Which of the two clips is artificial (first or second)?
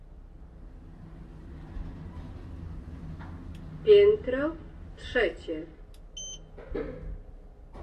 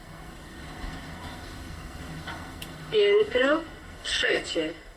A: second